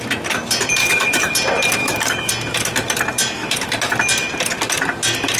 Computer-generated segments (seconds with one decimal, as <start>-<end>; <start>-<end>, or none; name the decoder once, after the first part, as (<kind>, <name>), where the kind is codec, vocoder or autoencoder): 0.8-1.3 (codec, DAC); 1.8-2.3